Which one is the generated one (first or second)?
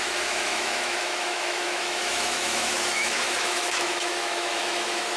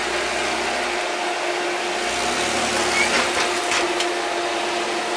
first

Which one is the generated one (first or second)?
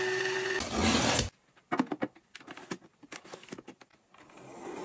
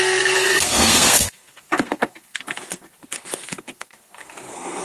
second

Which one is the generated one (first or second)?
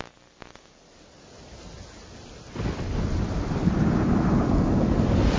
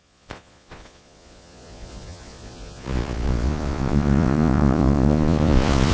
second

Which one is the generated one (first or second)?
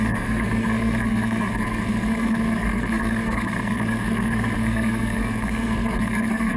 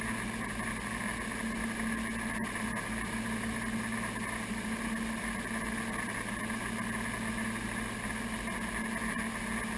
first